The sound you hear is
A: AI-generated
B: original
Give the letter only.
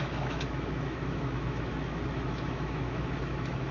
A